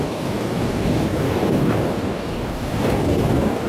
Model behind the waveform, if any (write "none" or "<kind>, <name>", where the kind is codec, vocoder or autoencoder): codec, DAC